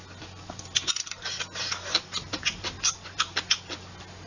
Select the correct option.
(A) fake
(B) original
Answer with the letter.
B